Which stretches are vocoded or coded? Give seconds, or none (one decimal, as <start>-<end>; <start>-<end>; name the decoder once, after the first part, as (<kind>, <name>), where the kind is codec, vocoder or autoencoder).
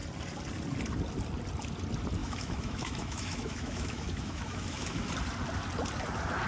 2.2-5.1 (autoencoder, DAC-VAE)